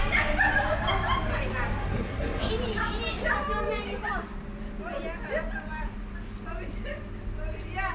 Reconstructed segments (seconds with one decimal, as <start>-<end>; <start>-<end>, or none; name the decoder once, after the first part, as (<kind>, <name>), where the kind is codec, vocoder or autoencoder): 1.8-2.5 (codec, SNAC)